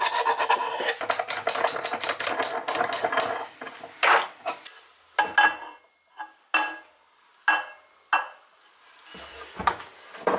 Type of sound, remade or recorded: recorded